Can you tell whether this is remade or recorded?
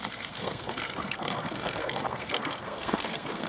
remade